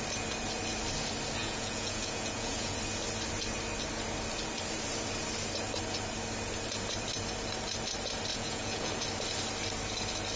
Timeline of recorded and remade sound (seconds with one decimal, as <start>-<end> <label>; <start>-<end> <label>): 0.0-1.4 recorded; 1.4-2.8 remade; 2.8-8.3 recorded; 8.3-8.9 remade; 8.9-10.4 recorded